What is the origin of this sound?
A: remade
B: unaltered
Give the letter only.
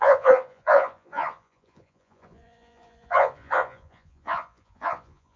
A